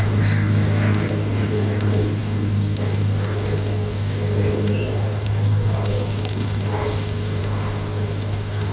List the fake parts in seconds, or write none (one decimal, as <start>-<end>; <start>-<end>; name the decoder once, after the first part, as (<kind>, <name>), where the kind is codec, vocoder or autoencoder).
0.0-8.7 (codec, DAC)